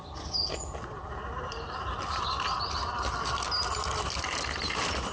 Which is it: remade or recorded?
recorded